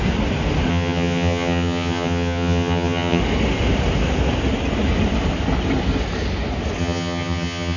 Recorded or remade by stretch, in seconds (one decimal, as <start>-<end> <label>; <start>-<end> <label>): 0.0-0.7 recorded; 0.7-3.2 remade; 3.2-6.8 recorded; 6.8-7.8 remade